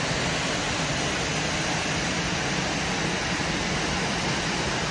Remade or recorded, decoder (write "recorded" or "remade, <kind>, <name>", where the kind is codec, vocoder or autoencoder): recorded